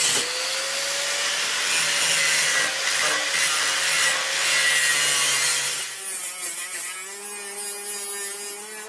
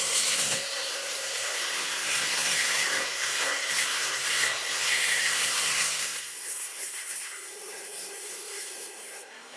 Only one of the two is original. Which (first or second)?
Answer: first